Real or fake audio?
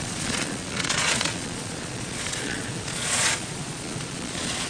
fake